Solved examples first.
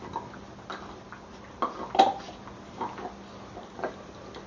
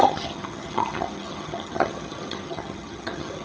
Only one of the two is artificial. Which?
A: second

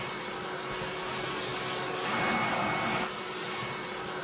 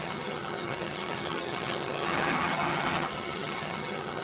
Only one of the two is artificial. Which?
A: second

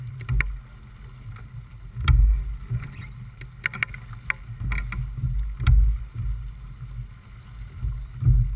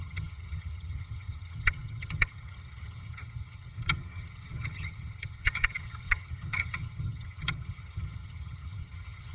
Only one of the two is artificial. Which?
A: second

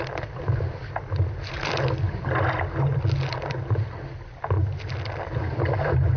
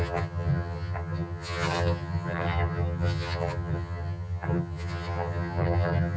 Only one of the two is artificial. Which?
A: second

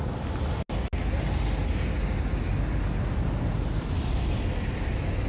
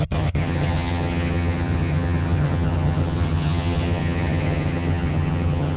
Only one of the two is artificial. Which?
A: second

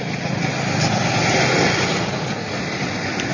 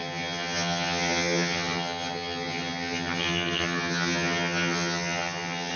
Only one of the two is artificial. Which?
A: second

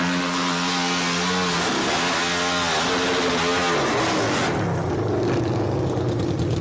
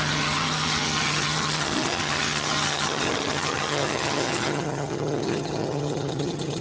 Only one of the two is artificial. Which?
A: second